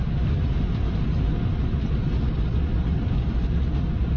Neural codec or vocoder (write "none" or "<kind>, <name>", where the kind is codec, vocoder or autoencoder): none